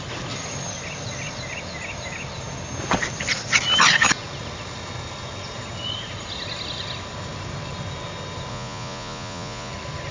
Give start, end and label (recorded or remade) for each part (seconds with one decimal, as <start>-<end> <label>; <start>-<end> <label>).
0.0-8.5 recorded; 8.5-9.7 remade; 9.7-10.1 recorded